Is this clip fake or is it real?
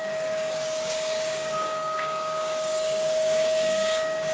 fake